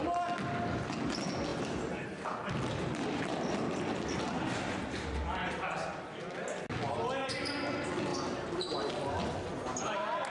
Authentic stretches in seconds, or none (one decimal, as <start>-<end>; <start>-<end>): 0.0-10.3